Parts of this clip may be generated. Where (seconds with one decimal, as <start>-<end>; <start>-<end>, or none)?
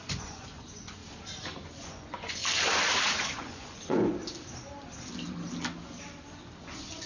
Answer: 0.0-1.0; 1.8-2.4; 3.2-4.2; 6.6-7.1